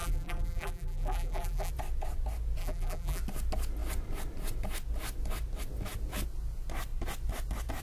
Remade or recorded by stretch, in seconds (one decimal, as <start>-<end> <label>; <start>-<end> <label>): 0.0-1.7 remade; 1.7-2.6 recorded; 2.6-3.2 remade; 3.2-7.8 recorded